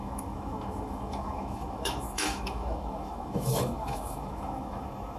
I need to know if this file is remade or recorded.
remade